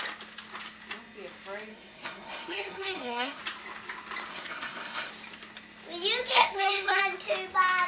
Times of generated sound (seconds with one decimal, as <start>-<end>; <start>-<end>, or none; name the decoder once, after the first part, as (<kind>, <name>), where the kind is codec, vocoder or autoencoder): 1.7-3.4 (codec, SNAC); 4.3-5.1; 6.3-7.0